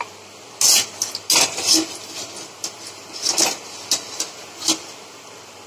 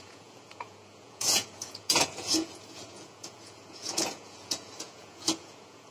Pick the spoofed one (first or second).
second